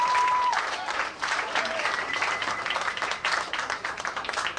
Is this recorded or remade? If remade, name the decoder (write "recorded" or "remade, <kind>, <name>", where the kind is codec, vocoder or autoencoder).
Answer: remade, vocoder, BigVGAN v2